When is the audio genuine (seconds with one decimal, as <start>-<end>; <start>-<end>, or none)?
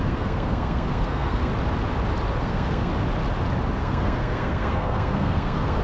1.5-2.4; 2.9-3.8